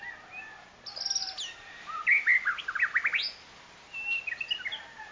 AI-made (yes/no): no